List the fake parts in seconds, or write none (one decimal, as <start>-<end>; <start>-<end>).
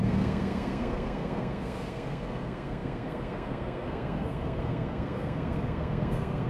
0.0-6.5